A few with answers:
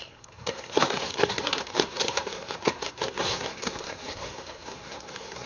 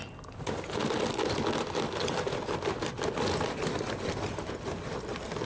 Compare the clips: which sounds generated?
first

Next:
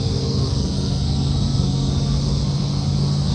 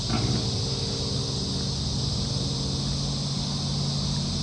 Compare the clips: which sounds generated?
first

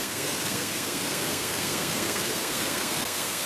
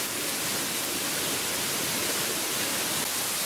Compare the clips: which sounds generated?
first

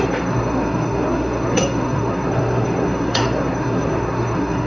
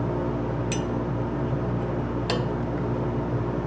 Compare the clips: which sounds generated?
first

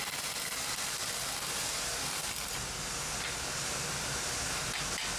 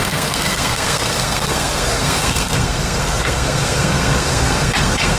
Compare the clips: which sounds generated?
second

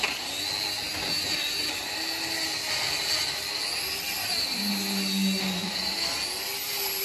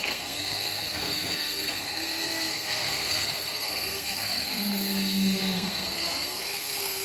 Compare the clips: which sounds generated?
second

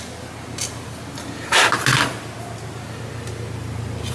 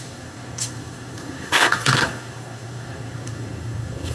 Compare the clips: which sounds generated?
second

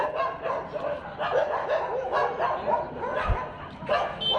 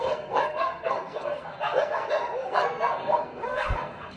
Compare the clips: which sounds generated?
second